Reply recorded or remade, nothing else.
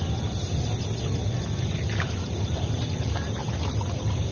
recorded